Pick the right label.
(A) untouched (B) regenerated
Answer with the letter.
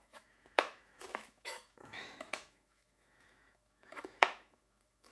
B